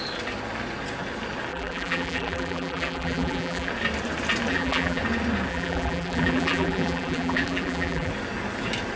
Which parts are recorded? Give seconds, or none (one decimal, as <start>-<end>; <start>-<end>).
0.0-1.5; 3.7-4.5; 5.0-5.5; 8.1-9.0